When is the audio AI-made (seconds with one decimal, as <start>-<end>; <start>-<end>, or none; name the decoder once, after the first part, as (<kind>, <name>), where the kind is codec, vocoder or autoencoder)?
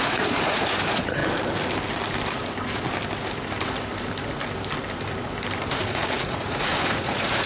0.0-1.2 (vocoder, Vocos); 5.7-7.5